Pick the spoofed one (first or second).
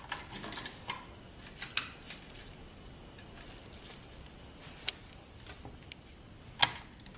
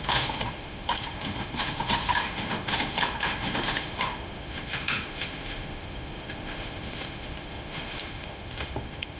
second